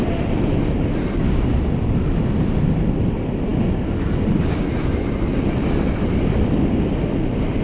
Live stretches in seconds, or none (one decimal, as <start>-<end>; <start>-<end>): 0.0-7.6